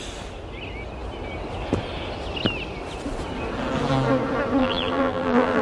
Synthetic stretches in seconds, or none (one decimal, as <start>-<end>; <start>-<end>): 4.6-5.6